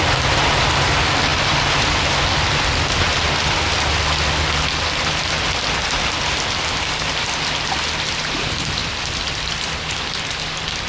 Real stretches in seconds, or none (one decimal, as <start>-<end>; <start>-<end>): 0.0-10.9